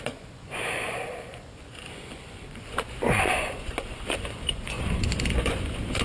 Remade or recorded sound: remade